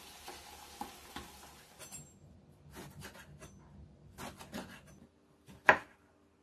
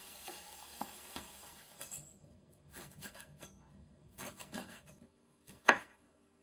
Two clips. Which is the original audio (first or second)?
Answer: first